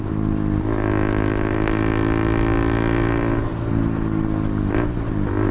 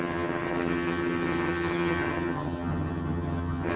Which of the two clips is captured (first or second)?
first